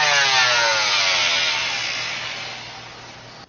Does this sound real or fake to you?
real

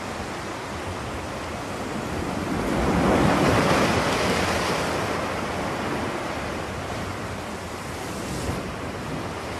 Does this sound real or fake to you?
real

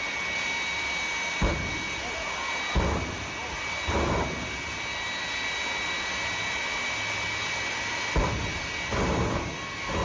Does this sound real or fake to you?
real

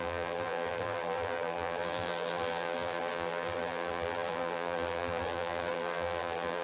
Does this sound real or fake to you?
fake